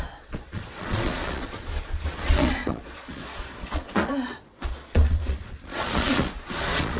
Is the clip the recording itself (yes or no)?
no